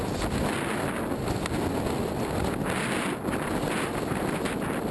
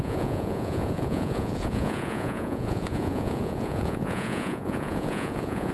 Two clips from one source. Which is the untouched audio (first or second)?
first